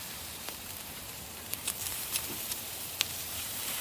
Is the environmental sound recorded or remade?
remade